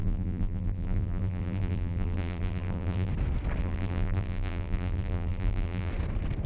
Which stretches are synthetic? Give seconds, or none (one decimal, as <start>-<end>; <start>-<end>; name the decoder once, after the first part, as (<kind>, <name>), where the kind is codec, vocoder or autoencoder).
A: 0.0-3.1 (vocoder, BigVGAN v2); 3.6-5.9